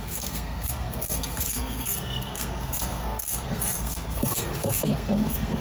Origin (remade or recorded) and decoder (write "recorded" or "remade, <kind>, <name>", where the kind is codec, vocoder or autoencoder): remade, codec, SNAC